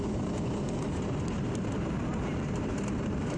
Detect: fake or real fake